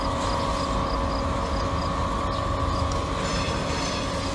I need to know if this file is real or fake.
real